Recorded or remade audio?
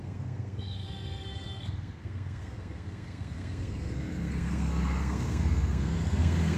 remade